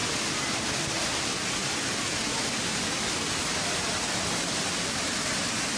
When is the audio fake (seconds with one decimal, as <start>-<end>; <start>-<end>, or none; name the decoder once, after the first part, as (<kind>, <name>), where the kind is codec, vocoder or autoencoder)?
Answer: 0.0-0.5 (vocoder, BigVGAN v2); 2.3-5.8